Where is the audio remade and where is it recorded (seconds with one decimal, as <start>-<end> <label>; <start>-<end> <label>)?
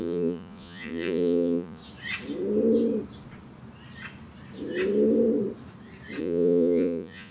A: 0.0-1.8 remade; 1.8-6.2 recorded; 6.2-7.3 remade